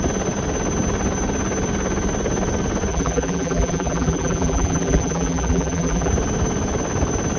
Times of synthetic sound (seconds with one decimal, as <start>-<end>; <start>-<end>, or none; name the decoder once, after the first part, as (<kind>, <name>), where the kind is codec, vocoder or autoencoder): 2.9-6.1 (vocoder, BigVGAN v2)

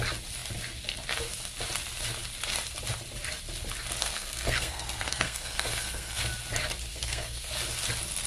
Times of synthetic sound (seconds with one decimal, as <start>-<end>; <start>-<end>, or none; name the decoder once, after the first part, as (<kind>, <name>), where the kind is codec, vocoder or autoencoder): 4.0-6.2 (codec, SNAC); 6.9-7.5

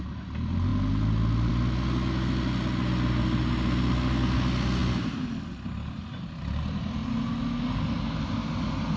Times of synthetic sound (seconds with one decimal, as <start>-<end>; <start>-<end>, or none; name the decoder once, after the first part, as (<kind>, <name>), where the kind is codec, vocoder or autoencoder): none

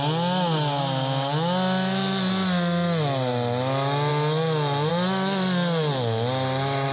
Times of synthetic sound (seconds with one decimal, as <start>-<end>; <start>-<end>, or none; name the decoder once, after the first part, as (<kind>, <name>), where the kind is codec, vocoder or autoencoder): none

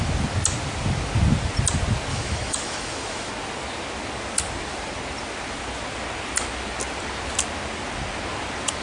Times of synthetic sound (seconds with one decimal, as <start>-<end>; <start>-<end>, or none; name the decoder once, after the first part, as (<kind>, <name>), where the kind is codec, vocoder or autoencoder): 2.1-3.3 (autoencoder, DAC-VAE)

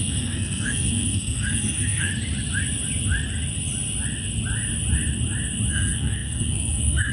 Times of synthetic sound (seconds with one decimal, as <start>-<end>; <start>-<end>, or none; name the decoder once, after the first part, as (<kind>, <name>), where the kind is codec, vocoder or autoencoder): 0.0-2.1 (codec, SNAC); 5.7-7.1